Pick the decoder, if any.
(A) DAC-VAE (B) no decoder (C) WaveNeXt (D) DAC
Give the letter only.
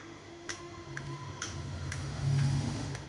A